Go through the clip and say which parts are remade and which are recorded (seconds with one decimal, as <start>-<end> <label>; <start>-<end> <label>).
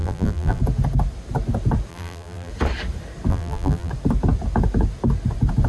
0.0-0.6 remade; 0.6-1.9 recorded; 1.9-2.5 remade; 2.5-3.3 recorded; 3.3-3.9 remade; 3.9-5.7 recorded